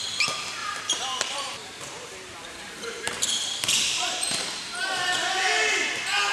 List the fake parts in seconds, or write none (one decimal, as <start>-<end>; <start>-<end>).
0.6-4.4